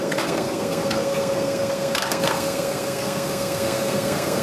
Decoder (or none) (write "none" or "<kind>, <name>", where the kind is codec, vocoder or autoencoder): codec, SNAC